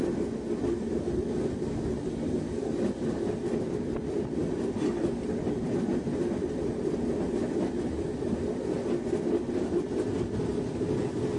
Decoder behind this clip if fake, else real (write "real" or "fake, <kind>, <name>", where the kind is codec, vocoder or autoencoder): real